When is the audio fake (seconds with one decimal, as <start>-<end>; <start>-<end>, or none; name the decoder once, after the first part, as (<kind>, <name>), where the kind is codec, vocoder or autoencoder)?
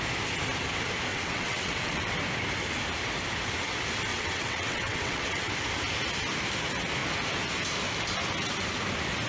1.1-2.1 (vocoder, WaveNeXt); 4.1-5.5